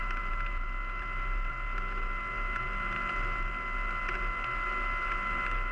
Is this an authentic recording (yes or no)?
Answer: yes